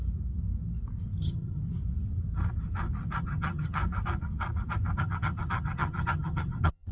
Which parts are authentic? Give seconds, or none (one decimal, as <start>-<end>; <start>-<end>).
0.0-1.2; 1.6-3.2; 3.8-5.0